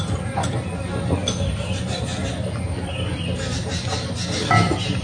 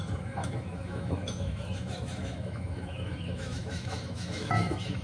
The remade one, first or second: second